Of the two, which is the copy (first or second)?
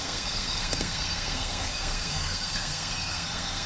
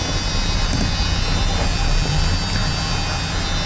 first